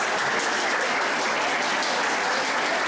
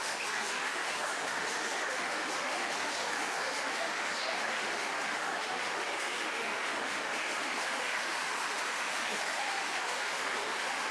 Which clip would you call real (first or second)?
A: first